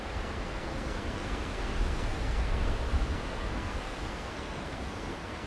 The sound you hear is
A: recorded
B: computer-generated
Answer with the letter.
B